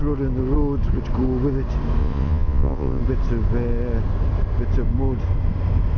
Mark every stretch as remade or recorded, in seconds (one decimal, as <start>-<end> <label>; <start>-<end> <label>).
0.0-2.0 recorded; 2.0-3.0 remade; 3.0-6.0 recorded